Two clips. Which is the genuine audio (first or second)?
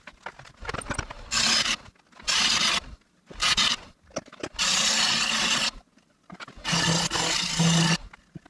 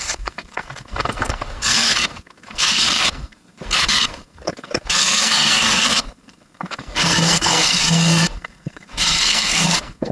first